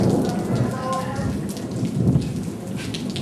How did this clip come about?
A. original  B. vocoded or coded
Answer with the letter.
A